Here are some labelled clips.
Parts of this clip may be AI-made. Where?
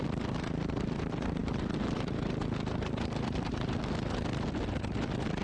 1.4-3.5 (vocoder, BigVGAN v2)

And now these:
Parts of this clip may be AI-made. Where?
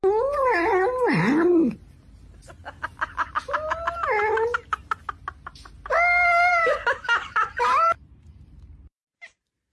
0.0-2.4 (vocoder, BigVGAN v2); 6.5-9.7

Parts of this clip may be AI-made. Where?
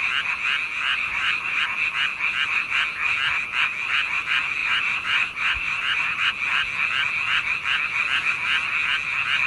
0.9-1.6 (vocoder, BigVGAN v2); 4.6-6.3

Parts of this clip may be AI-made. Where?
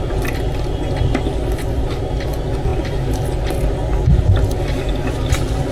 none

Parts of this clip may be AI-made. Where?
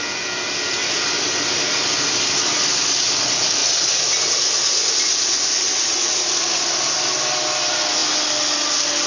0.8-1.7 (vocoder, BigVGAN v2)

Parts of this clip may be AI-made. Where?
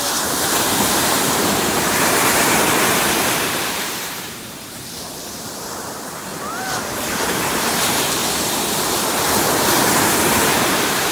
0.0-8.2 (vocoder, BigVGAN v2); 10.5-11.1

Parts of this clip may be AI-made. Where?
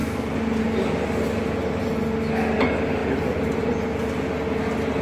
none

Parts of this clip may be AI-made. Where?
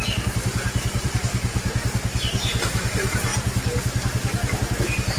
0.0-1.5 (vocoder, BigVGAN v2); 2.2-3.3